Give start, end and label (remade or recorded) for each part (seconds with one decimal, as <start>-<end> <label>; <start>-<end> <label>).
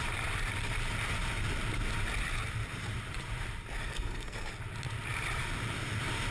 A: 0.0-3.8 recorded; 3.8-4.5 remade; 4.5-6.3 recorded